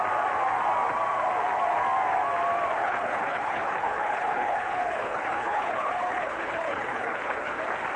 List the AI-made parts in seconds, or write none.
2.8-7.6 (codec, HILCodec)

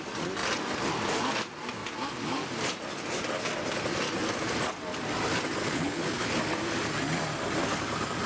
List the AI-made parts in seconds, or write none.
5.6-6.4 (codec, HILCodec)

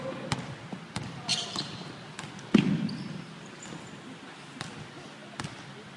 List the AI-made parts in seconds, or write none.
none